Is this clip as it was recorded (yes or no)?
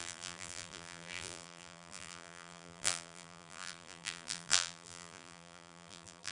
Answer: no